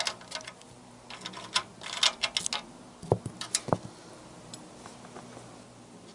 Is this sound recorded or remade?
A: recorded